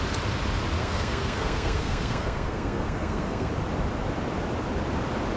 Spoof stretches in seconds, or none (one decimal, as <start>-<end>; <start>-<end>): 0.8-3.5